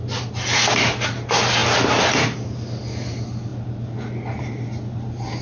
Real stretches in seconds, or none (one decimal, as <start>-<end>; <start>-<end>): 0.0-5.4